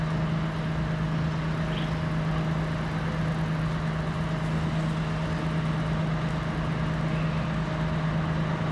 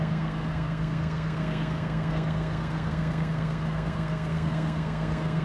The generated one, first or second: second